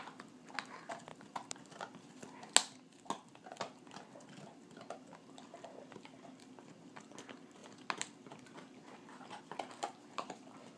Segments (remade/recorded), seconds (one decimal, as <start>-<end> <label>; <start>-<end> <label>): 0.0-10.8 recorded